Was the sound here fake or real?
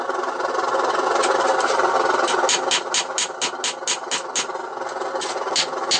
real